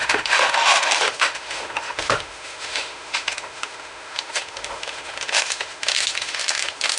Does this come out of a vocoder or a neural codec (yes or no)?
yes